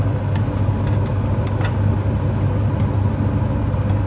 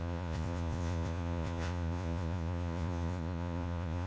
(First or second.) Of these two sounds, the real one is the first